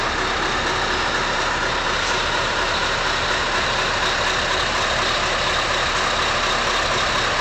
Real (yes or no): yes